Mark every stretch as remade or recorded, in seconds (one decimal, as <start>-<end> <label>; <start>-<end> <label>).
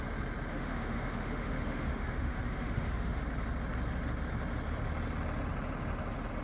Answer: 0.0-0.5 recorded; 0.5-3.2 remade; 3.2-6.4 recorded